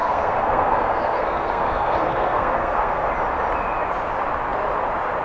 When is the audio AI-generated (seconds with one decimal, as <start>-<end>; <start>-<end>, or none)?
0.0-3.1

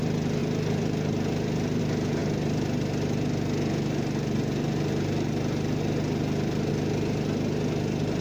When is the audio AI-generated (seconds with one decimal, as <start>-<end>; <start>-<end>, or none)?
none

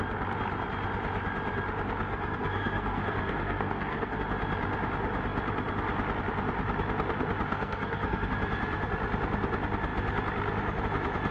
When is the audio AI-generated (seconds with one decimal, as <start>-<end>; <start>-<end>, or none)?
2.1-4.2; 7.5-8.3

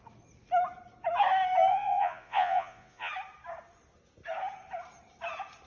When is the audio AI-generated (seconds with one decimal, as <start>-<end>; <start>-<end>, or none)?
1.7-3.1